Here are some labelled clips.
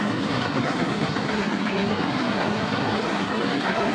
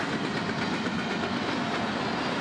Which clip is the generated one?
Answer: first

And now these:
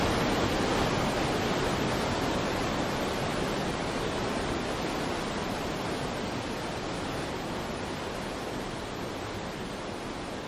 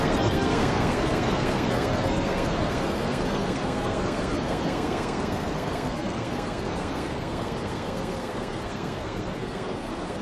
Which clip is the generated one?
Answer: second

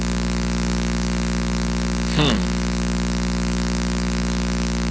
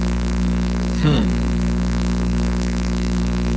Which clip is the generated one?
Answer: second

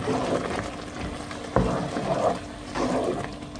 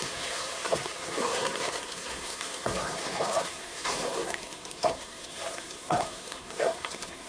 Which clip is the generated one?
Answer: second